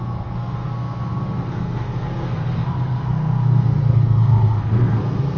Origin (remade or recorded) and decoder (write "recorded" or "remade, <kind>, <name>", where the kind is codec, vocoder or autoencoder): remade, codec, SNAC